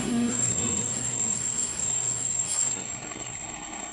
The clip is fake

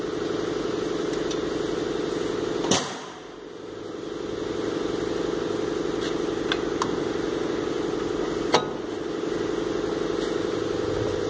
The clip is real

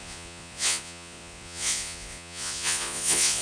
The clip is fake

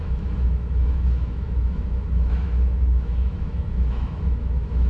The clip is fake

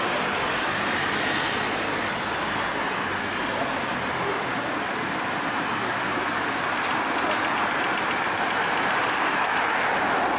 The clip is real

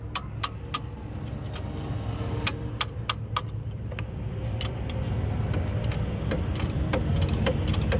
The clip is real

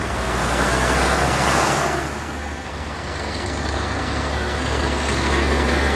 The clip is fake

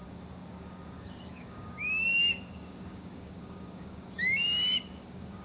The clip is fake